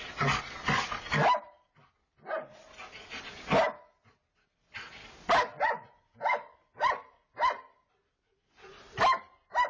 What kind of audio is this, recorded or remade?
recorded